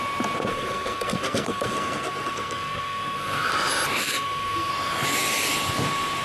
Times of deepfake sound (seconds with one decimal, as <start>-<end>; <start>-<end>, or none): 0.5-3.5; 4.0-4.7